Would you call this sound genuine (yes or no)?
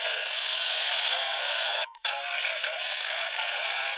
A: no